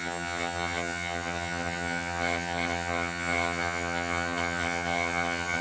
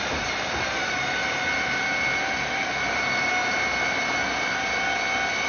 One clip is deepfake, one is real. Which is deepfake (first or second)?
first